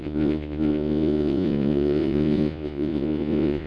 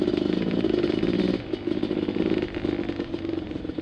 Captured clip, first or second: second